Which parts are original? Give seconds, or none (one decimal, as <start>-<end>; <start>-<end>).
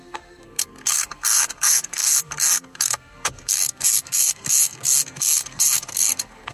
none